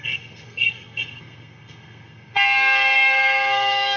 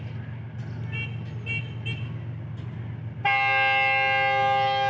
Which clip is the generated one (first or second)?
first